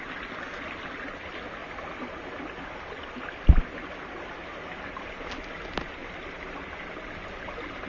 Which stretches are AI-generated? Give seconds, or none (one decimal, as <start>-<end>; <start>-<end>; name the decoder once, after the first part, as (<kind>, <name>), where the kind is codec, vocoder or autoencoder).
none